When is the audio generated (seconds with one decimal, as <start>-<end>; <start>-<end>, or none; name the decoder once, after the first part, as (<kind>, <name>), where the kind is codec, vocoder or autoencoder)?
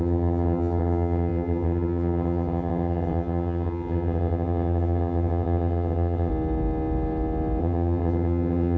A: 0.0-6.3 (vocoder, HiFi-GAN); 7.6-8.8